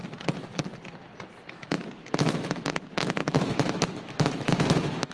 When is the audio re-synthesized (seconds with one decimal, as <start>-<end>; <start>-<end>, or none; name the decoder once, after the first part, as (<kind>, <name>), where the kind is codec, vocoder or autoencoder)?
1.5-5.1 (autoencoder, DAC-VAE)